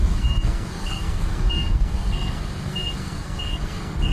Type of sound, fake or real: fake